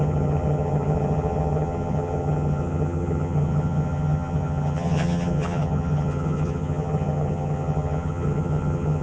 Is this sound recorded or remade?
remade